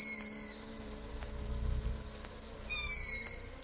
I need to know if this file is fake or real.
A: real